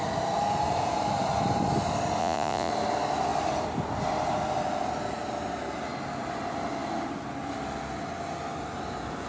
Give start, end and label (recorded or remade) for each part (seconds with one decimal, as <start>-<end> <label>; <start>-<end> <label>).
0.0-2.2 recorded; 2.2-2.7 remade; 2.7-9.3 recorded